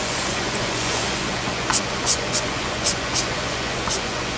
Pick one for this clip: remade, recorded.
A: remade